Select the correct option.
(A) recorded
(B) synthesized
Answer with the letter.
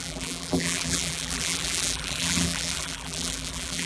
B